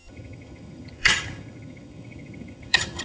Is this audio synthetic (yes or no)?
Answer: yes